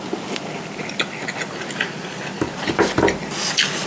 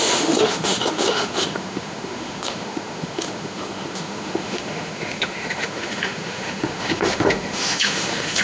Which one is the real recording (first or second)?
first